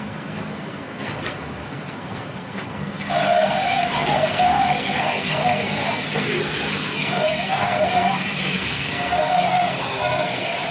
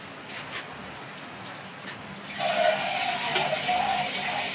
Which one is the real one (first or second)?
second